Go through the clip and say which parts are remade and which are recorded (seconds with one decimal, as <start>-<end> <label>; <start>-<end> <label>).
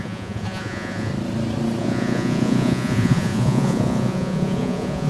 0.0-1.1 remade; 1.1-1.8 recorded; 1.8-5.1 remade